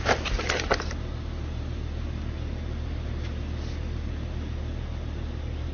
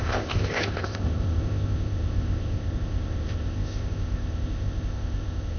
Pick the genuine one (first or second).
first